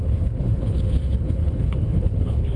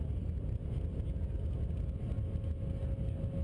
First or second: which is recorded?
second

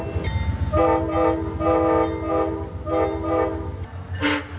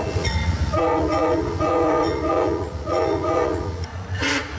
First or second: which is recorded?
first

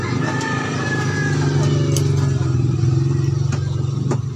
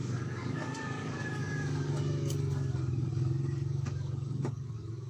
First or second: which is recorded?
first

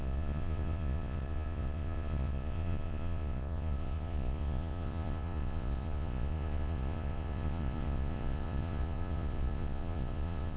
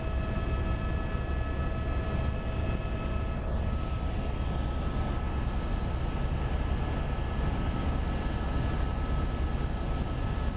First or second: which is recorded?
second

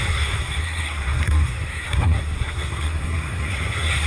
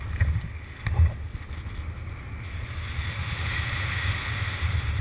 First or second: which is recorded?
second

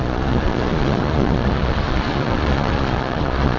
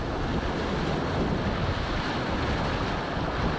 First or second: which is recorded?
second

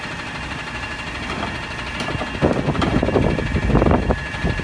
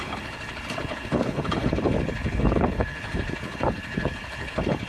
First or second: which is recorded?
first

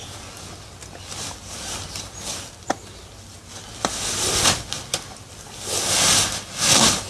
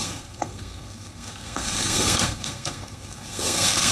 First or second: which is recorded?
first